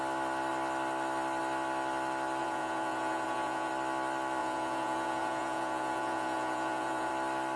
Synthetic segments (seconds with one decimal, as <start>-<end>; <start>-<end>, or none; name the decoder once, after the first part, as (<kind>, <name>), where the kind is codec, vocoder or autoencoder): 2.4-3.7 (vocoder, Vocos); 4.4-7.1